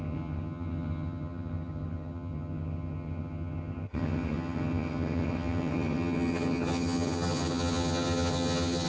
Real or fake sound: fake